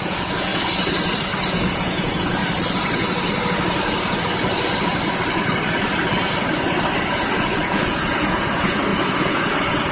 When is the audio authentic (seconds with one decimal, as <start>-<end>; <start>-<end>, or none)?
0.5-1.5; 2.4-7.3